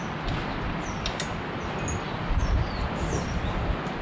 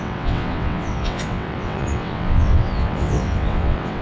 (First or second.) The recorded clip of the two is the first